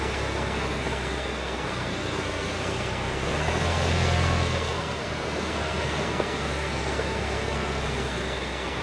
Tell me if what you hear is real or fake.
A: fake